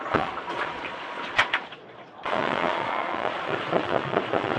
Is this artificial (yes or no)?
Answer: yes